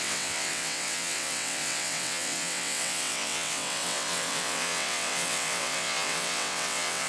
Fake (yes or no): yes